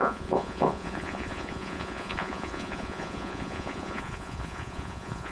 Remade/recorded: remade